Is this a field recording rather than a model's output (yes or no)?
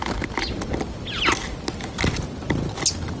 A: yes